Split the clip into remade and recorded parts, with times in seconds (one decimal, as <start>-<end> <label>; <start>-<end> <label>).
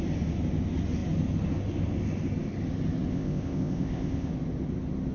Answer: 0.0-3.1 recorded; 3.1-4.3 remade; 4.3-5.1 recorded